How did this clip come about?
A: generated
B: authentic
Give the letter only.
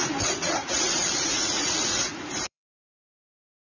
A